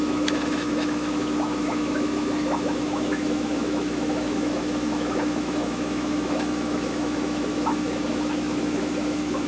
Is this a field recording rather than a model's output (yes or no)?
no